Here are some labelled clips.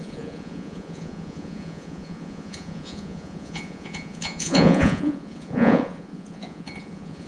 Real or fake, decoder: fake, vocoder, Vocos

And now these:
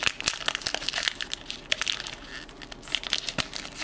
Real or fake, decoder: real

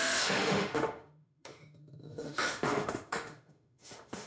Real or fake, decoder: fake, autoencoder, DAC-VAE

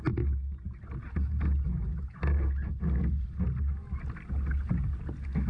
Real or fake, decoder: real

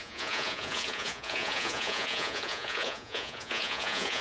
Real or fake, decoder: fake, vocoder, Vocos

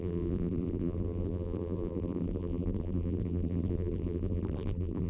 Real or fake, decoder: fake, vocoder, BigVGAN v2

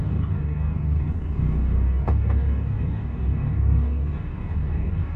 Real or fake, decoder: fake, codec, DAC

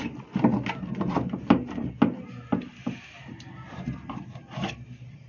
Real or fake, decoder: real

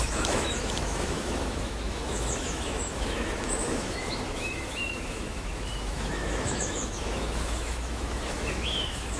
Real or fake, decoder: fake, autoencoder, DAC-VAE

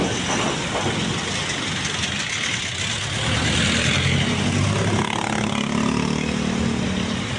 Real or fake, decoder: real